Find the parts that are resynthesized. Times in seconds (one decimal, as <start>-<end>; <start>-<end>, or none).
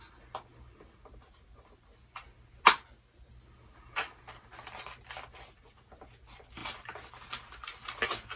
none